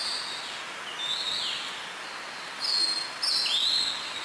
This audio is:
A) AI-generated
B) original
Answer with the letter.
B